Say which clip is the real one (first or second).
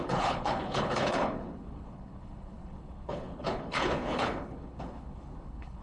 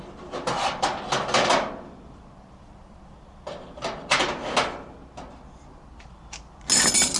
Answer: second